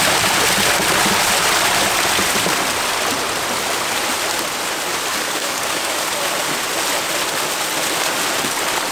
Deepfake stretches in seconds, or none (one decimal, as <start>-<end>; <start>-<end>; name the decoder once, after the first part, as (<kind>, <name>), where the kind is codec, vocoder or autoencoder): 5.1-5.9 (codec, DAC)